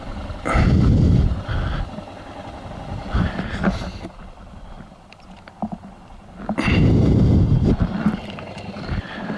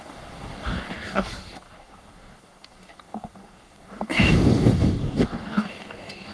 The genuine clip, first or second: first